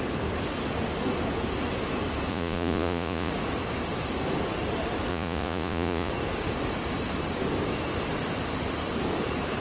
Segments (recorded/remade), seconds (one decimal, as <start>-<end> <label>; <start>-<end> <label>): 0.0-2.3 recorded; 2.3-3.3 remade; 3.3-5.1 recorded; 5.1-6.1 remade; 6.1-9.6 recorded